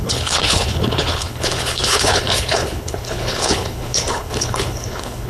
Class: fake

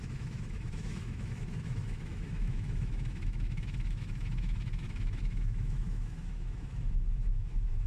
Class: fake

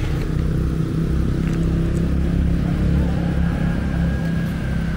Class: real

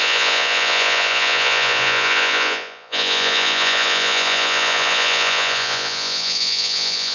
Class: fake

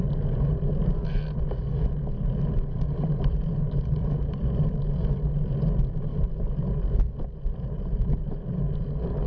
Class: real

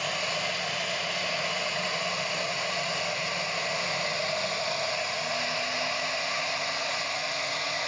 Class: real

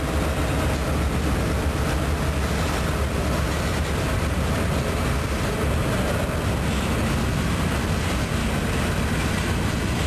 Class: real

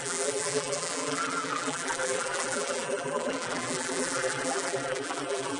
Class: fake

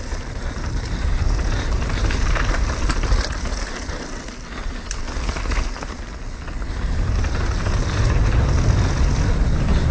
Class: real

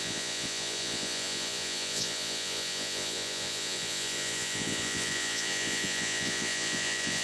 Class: fake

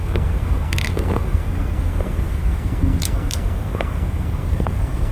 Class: fake